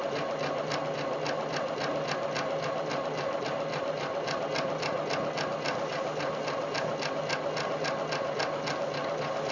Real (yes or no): yes